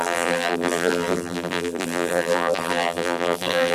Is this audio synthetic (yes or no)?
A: yes